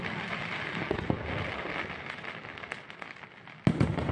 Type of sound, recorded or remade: recorded